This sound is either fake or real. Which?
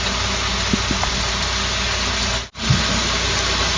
real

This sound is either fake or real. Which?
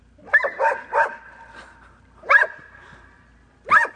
real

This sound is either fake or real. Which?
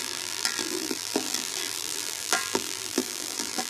fake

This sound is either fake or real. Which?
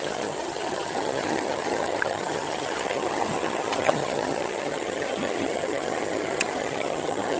fake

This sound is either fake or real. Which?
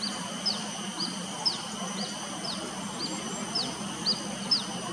real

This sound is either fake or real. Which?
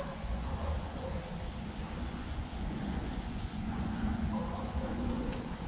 fake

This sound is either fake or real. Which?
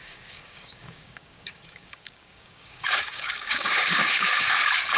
fake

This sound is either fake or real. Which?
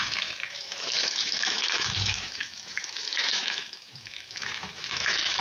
fake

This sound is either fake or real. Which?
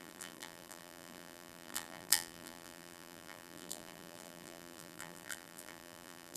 fake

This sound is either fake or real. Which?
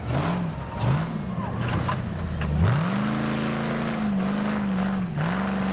real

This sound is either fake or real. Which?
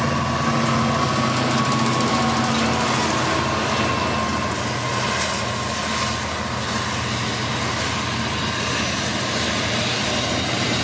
real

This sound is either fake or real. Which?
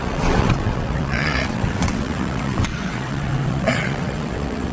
fake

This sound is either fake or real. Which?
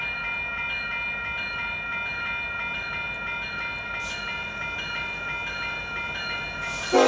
real